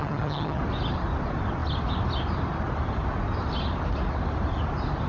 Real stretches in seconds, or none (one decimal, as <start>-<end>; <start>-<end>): 0.6-5.1